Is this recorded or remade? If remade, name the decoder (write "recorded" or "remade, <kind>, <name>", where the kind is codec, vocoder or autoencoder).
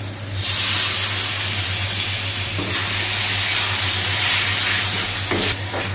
recorded